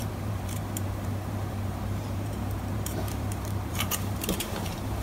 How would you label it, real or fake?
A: fake